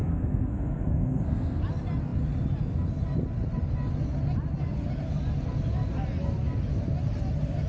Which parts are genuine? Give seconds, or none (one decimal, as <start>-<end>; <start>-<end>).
1.6-7.7